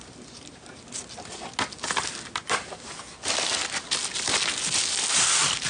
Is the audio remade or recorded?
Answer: recorded